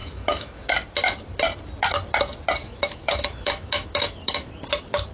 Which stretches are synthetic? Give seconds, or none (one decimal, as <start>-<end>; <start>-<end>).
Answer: 0.0-0.7; 2.6-4.5